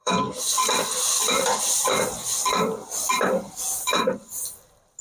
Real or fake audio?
fake